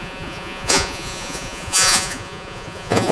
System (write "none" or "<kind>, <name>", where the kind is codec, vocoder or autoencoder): vocoder, Vocos